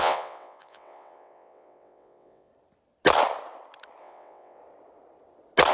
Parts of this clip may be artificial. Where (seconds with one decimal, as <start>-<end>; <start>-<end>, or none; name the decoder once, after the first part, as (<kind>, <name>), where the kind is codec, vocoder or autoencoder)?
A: 0.0-2.5 (vocoder, WaveNeXt); 4.0-4.6